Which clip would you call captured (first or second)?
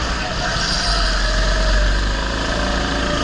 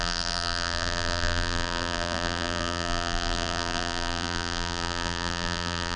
first